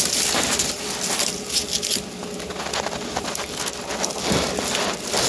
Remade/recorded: recorded